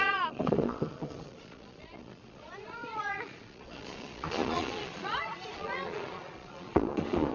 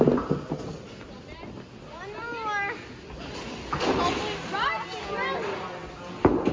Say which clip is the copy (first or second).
first